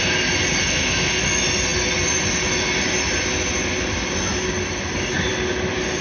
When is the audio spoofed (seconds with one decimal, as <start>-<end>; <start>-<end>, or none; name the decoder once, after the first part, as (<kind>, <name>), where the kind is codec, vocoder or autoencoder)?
0.6-1.2 (codec, SNAC)